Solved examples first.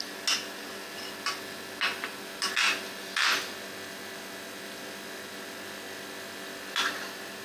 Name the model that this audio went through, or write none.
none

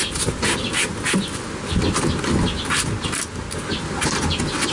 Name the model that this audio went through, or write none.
none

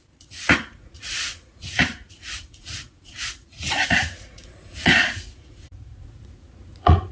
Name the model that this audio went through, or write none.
vocoder, Vocos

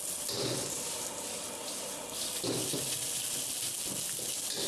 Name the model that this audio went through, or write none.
none